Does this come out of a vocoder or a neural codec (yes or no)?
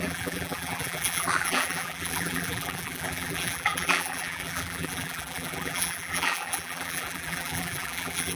yes